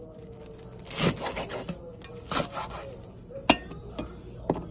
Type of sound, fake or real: real